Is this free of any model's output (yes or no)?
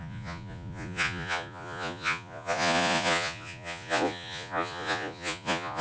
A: no